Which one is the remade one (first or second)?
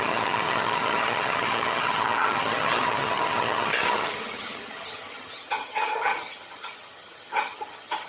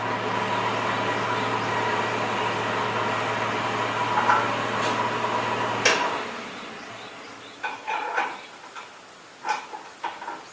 first